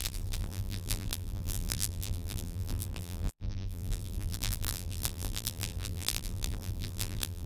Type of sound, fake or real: fake